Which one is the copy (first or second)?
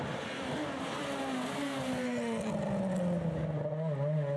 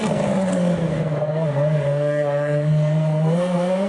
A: second